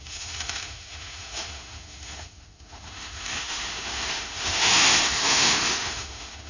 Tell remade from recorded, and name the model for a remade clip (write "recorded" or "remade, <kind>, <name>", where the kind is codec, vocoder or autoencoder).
remade, autoencoder, DAC-VAE